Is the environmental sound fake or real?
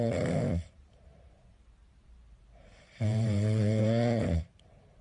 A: fake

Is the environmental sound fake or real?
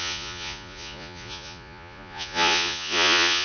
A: fake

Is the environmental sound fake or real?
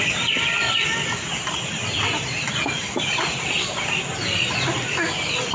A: real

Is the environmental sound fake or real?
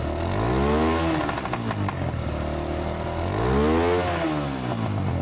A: real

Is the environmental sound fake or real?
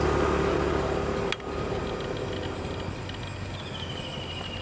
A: real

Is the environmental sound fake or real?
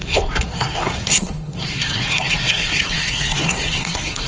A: fake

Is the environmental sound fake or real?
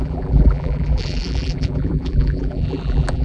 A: fake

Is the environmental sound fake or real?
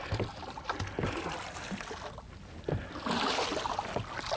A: real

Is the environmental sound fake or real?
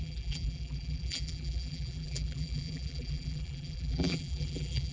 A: fake